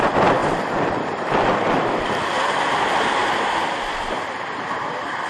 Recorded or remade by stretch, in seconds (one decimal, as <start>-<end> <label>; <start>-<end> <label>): 0.0-0.4 recorded; 0.4-3.3 remade; 3.3-5.3 recorded